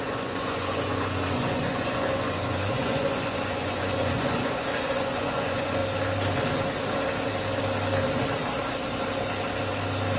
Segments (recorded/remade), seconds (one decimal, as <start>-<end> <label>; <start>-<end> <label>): 0.0-5.8 remade; 5.8-10.2 recorded